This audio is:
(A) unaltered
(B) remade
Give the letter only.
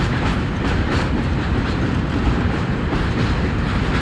B